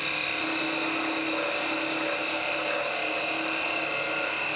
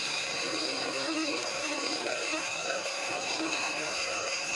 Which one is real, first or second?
first